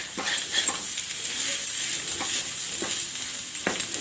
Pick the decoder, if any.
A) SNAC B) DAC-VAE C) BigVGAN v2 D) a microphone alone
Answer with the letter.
D